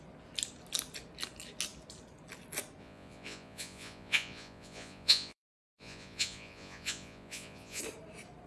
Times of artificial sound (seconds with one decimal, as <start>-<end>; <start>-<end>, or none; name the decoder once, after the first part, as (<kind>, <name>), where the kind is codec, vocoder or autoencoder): 2.8-7.8 (vocoder, Vocos)